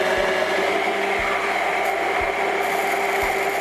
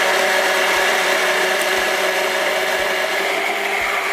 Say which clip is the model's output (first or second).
second